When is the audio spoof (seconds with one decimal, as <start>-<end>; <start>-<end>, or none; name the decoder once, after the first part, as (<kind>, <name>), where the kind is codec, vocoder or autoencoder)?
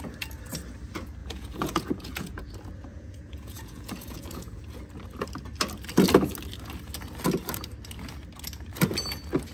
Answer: 1.2-2.5 (vocoder, Vocos); 2.9-4.8